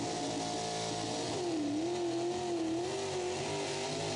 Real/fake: real